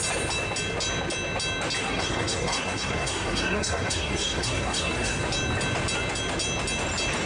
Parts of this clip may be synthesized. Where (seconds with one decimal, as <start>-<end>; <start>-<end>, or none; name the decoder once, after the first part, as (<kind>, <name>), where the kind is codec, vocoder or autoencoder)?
1.8-5.2 (codec, SNAC)